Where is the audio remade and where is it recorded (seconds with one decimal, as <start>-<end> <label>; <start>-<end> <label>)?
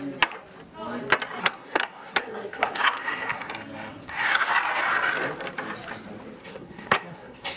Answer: 0.0-1.4 recorded; 1.4-3.5 remade; 3.5-3.9 recorded; 3.9-4.5 remade; 4.5-6.4 recorded; 6.4-7.6 remade